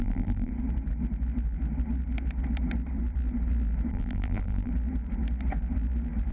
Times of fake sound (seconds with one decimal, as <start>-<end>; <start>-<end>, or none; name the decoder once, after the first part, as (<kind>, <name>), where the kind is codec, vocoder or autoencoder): 0.0-0.5 (vocoder, BigVGAN v2); 3.9-4.7